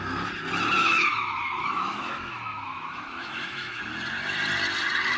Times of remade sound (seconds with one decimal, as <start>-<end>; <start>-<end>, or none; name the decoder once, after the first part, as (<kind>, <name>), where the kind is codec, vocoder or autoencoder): 0.8-3.8 (autoencoder, DAC-VAE)